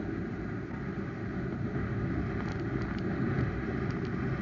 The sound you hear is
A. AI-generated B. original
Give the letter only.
B